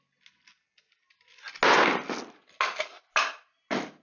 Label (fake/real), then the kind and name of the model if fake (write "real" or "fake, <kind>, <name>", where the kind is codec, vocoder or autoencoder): real